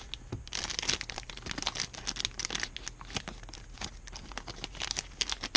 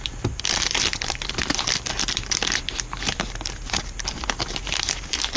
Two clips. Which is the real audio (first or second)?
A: first